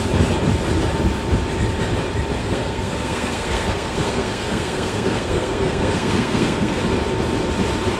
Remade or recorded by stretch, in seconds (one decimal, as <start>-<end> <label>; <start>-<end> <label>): 0.0-2.4 recorded; 2.4-6.8 remade; 6.8-8.0 recorded

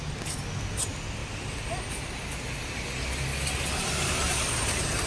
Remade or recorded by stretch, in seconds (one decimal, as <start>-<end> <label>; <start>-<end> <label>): 0.0-5.1 recorded

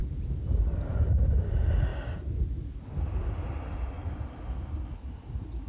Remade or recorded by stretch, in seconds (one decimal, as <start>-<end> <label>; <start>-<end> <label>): 0.0-5.7 recorded

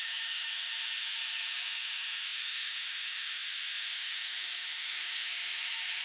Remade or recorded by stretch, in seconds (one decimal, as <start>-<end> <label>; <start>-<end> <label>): 0.0-6.0 remade

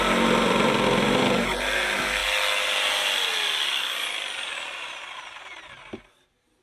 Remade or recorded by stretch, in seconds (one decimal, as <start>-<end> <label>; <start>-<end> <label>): 0.0-6.6 recorded

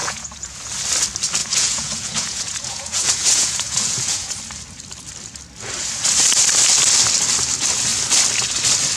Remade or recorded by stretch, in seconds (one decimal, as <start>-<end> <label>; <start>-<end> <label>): 0.0-0.6 remade; 0.6-1.4 recorded; 1.4-4.3 remade; 4.3-9.0 recorded

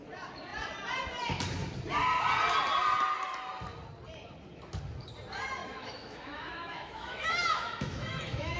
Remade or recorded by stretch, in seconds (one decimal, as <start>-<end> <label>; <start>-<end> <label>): 0.0-5.6 recorded; 5.6-8.6 remade